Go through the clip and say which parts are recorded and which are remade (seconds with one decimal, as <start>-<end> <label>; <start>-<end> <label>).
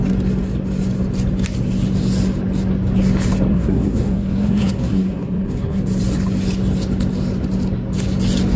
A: 0.0-3.5 recorded; 3.5-5.8 remade; 5.8-8.6 recorded